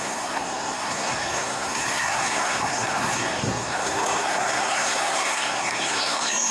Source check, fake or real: fake